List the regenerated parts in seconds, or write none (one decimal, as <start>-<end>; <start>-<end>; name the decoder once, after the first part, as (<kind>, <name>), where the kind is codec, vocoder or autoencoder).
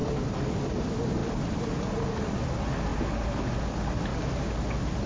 none